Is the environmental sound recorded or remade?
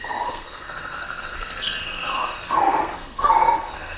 remade